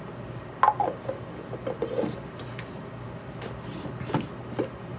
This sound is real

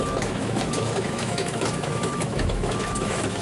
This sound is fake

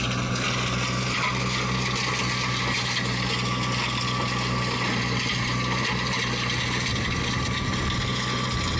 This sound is real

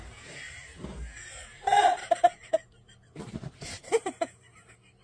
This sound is fake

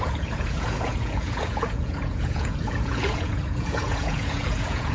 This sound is fake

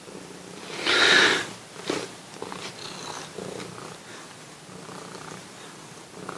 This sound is real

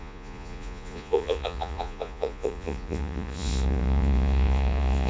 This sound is fake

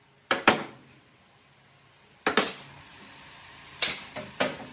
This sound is real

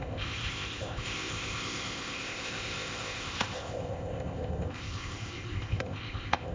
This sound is fake